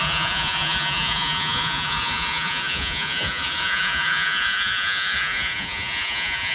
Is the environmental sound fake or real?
fake